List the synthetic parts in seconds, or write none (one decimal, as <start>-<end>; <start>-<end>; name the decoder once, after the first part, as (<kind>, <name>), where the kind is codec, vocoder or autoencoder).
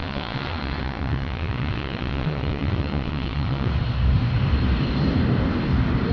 0.0-3.7 (vocoder, WaveNeXt)